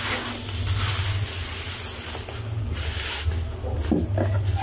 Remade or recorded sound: recorded